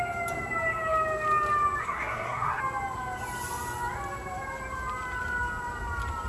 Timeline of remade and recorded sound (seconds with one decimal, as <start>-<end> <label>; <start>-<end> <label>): 0.0-1.8 recorded; 1.8-2.6 remade; 2.6-6.3 recorded